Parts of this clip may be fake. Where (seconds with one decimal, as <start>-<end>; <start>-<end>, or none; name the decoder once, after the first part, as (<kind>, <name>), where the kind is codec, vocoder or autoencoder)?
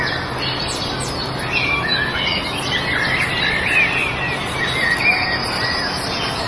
none